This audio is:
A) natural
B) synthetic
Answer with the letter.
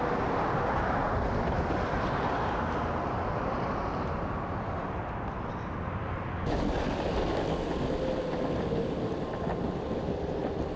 A